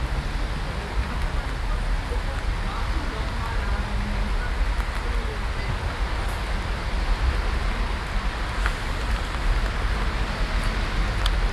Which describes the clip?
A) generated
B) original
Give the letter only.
B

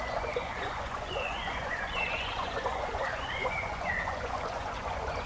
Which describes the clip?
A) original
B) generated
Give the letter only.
B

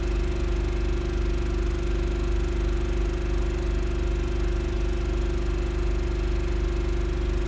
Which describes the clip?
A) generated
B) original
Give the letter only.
B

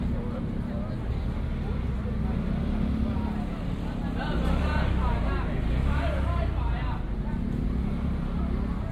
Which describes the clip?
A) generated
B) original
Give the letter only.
B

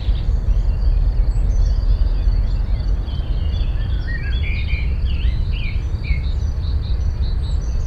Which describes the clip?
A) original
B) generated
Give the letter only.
A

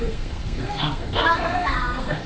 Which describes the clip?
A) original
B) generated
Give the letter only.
B